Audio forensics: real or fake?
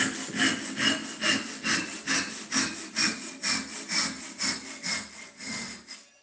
real